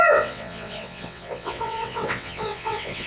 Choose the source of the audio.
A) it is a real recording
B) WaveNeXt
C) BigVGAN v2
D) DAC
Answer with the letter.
B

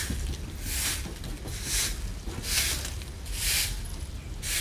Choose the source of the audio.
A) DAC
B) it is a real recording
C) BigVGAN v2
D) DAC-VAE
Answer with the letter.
B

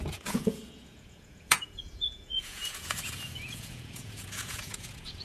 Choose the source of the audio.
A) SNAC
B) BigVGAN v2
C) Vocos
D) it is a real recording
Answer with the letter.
C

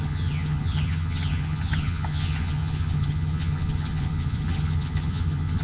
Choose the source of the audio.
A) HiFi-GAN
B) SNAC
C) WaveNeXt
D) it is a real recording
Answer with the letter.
A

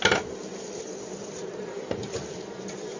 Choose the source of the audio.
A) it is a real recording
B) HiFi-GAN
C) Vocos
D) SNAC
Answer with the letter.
A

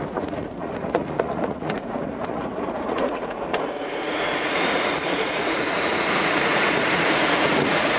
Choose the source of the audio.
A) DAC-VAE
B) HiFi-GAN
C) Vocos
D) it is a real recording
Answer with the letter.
C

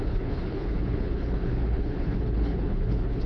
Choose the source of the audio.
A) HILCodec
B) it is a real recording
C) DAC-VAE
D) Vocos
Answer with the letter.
A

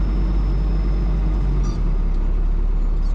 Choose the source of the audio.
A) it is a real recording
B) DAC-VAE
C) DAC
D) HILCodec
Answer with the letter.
A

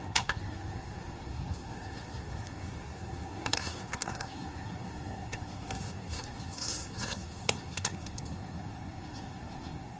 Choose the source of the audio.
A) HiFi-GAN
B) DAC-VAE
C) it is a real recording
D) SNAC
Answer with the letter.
D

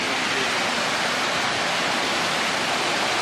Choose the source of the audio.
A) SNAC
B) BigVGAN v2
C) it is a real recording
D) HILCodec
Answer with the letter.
B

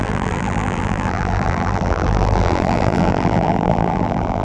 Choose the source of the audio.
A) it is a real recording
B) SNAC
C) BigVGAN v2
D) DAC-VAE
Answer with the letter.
C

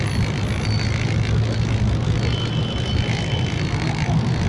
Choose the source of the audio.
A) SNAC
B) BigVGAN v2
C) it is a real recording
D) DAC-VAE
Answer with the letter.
C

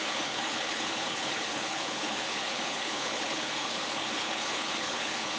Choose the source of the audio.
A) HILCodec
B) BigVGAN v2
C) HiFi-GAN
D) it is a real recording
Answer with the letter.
A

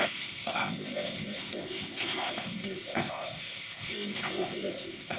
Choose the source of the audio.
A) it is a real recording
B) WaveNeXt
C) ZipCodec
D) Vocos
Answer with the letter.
C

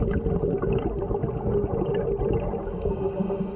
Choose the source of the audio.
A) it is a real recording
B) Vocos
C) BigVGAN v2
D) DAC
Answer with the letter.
A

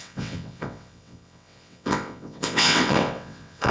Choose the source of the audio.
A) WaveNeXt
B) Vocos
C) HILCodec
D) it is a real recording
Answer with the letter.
A